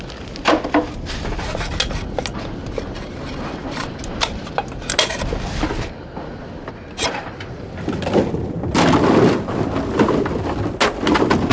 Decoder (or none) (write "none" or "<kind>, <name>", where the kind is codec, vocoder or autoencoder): none